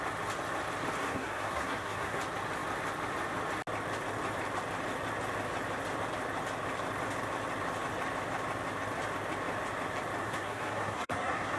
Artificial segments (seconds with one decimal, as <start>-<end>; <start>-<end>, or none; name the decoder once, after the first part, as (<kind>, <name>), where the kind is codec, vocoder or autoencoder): 1.0-2.2 (codec, SNAC); 10.2-11.6